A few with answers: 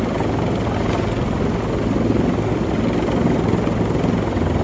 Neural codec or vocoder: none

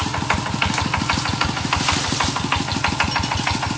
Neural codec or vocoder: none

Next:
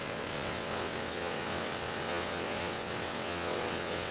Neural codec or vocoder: vocoder, WaveNeXt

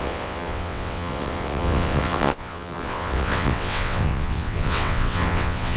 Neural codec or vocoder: vocoder, WaveNeXt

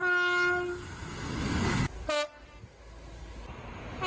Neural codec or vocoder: none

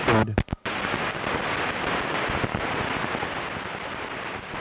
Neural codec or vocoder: none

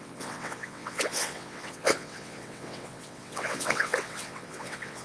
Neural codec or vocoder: vocoder, WaveNeXt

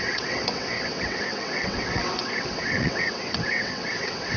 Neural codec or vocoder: vocoder, WaveNeXt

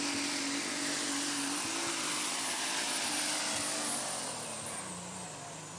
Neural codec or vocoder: none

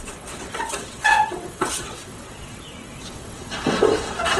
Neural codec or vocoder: vocoder, WaveNeXt